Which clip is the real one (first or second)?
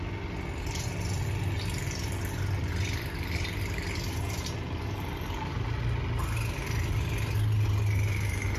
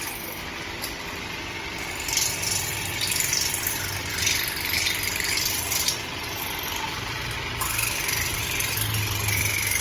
first